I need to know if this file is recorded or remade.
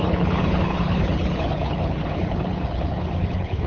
remade